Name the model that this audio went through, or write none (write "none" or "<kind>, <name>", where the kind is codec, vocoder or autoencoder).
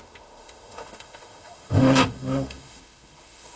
autoencoder, DAC-VAE